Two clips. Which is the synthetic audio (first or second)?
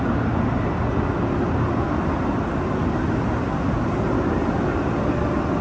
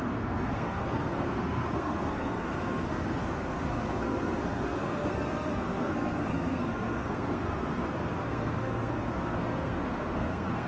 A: second